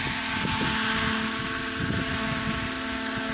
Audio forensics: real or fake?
real